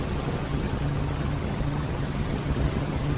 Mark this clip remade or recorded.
remade